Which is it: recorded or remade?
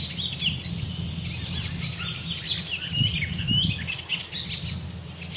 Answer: recorded